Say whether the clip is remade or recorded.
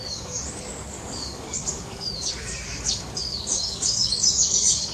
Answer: remade